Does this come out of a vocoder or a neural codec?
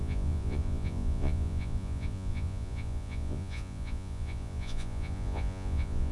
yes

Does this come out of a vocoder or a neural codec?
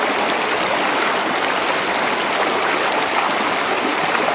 no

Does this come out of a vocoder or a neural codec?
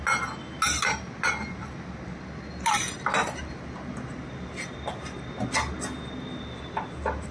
no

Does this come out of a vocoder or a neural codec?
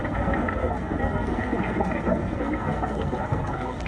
yes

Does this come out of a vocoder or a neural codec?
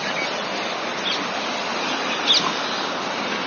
no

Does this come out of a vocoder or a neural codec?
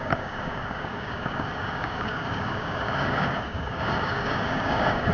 yes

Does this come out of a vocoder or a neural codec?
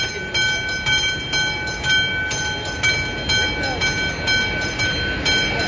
no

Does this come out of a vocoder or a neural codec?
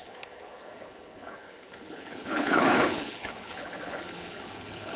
yes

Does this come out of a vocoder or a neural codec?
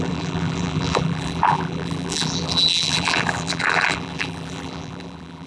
yes